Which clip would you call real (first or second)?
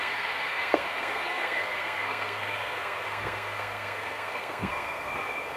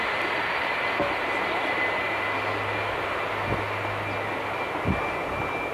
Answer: second